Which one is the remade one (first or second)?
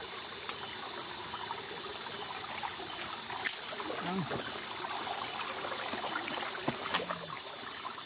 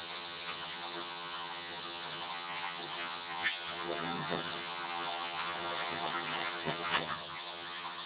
second